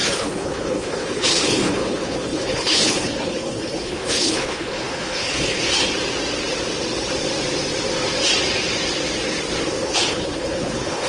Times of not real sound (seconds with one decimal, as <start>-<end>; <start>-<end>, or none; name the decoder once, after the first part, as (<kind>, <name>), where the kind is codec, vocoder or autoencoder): 0.0-5.7 (codec, HILCodec); 9.8-11.1